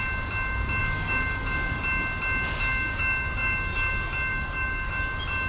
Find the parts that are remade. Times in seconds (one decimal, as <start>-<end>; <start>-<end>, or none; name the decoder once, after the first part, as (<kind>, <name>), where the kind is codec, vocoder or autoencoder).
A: 0.8-1.8 (codec, DAC); 2.7-3.9; 4.3-4.9